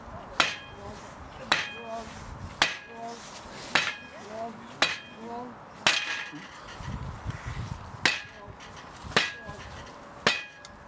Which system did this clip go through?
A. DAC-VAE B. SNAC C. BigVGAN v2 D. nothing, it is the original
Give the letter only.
D